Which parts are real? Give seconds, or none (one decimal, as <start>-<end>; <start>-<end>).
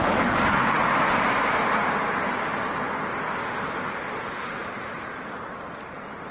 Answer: 0.0-0.6; 2.4-4.6